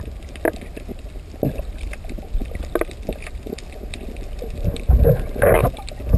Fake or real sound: real